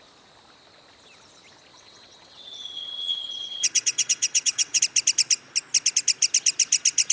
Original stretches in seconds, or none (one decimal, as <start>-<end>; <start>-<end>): 0.0-1.7; 4.8-7.1